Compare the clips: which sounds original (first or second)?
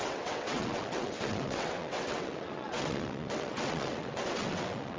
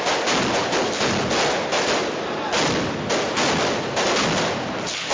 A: second